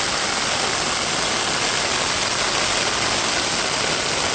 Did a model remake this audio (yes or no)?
no